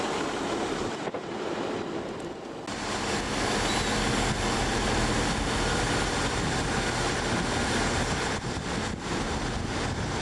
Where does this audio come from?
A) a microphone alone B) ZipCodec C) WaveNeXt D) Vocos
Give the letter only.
A